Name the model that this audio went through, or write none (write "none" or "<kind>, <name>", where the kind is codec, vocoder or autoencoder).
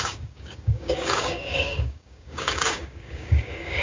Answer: codec, DAC